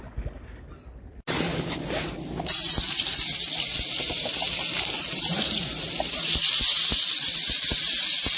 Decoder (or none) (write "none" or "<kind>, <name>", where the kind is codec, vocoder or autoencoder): none